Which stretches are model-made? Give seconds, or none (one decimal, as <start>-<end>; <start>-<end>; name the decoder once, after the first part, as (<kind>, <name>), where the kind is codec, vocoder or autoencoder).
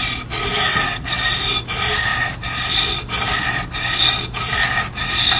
0.7-1.3 (codec, SNAC)